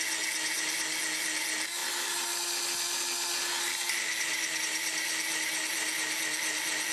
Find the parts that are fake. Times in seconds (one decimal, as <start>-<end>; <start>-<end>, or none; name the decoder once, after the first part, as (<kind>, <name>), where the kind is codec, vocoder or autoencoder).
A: none